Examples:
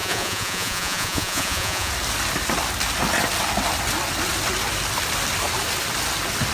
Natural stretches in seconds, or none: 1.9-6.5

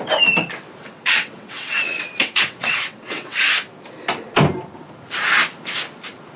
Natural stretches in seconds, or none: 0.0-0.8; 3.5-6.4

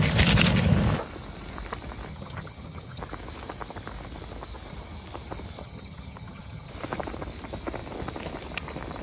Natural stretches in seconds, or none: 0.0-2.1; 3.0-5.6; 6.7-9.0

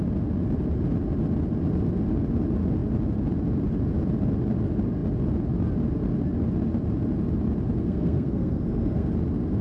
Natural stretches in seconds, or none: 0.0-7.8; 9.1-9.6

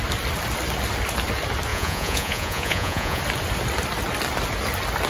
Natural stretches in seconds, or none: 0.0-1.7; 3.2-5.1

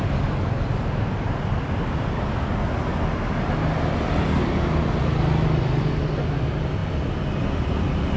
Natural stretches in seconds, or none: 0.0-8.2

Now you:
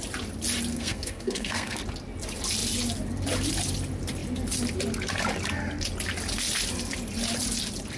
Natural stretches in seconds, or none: 0.0-0.7; 1.8-8.0